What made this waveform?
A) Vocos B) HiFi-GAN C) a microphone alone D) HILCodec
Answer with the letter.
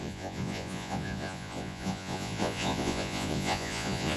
A